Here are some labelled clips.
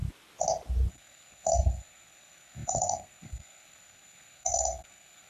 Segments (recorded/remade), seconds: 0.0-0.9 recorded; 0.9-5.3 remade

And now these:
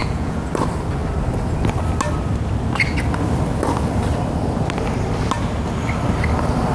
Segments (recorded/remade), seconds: 0.0-0.5 remade; 0.5-6.7 recorded

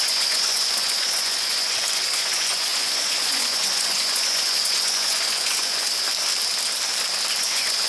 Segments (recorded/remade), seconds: 0.0-5.9 remade; 5.9-7.4 recorded; 7.4-7.9 remade

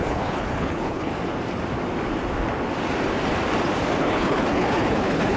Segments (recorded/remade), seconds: 0.0-1.1 remade; 1.1-4.0 recorded; 4.0-5.4 remade

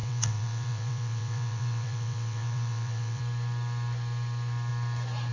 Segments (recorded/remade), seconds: 0.0-3.2 remade; 3.2-5.3 recorded

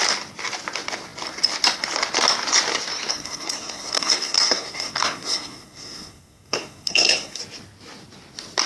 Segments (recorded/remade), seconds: 0.0-3.1 recorded; 3.1-7.4 remade; 7.4-8.7 recorded

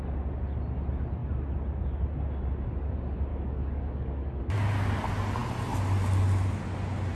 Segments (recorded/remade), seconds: 0.0-3.3 recorded; 3.3-4.4 remade; 4.4-7.1 recorded